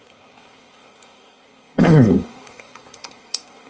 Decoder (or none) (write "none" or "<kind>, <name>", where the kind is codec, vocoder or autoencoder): codec, SNAC